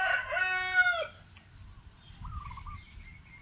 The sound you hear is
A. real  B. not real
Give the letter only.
A